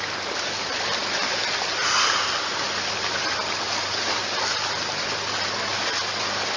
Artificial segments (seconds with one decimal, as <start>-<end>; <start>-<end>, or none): none